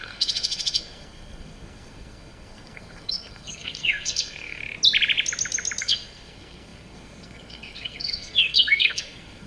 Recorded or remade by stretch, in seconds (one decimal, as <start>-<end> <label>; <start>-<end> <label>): 0.0-4.6 remade; 4.6-5.8 recorded; 5.8-9.5 remade